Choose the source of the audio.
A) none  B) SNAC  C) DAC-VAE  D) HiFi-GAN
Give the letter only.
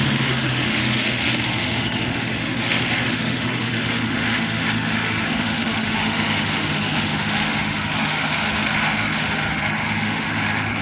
C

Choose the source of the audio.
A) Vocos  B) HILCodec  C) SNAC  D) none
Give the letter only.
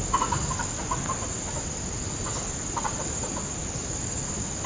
D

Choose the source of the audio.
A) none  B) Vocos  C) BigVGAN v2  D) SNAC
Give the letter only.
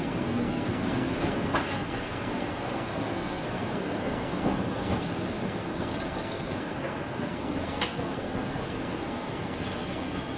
D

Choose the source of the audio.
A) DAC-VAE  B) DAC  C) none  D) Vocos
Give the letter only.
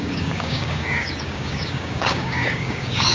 B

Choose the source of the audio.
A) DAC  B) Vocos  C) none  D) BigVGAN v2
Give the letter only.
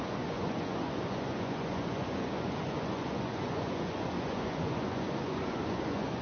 B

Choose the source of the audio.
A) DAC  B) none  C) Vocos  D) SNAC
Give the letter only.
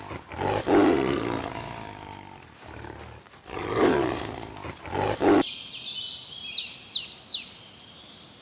B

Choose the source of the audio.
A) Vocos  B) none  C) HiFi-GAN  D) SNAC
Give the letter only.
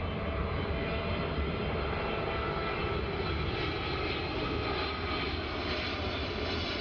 B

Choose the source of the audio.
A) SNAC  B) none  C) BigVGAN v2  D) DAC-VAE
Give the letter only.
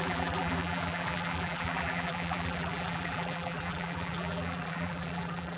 C